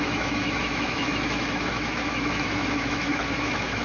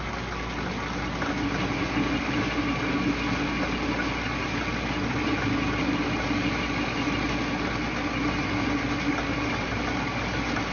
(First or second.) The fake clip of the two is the first